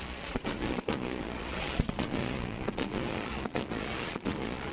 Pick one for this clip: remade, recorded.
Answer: remade